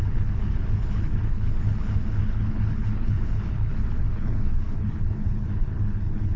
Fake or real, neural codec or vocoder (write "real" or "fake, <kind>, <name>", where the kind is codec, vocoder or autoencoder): fake, codec, HILCodec